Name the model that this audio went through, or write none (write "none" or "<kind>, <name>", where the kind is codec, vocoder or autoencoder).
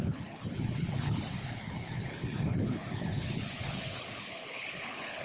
codec, HILCodec